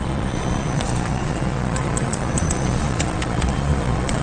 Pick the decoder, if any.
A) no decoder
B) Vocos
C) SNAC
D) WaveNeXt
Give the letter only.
B